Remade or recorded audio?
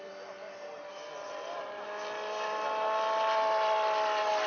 recorded